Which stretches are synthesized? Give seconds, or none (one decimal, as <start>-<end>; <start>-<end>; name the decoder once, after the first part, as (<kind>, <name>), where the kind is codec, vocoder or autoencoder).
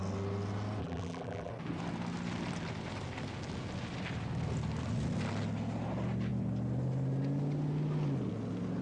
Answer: 0.8-1.5 (vocoder, BigVGAN v2)